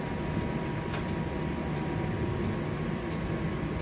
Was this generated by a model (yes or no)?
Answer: no